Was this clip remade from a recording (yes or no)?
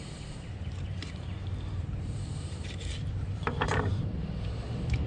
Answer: yes